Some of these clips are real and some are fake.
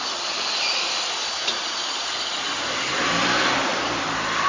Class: real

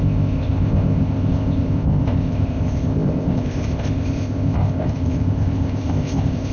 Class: fake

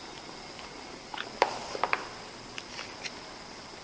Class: real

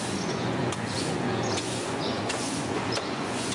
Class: fake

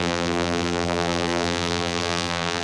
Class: fake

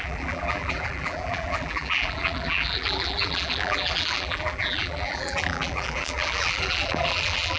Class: fake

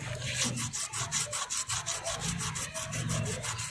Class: real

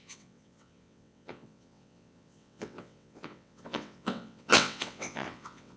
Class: fake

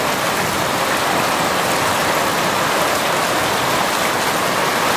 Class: real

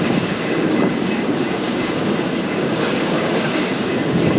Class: fake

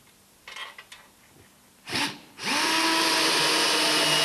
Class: real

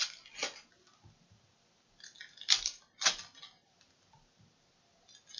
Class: real